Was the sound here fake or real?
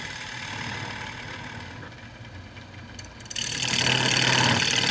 real